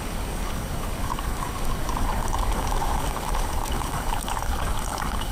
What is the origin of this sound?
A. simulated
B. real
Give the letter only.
A